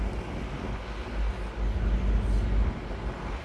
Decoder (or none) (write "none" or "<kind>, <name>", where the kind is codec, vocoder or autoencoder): none